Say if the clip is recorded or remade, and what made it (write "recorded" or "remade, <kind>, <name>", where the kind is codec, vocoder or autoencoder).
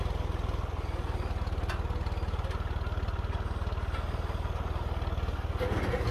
recorded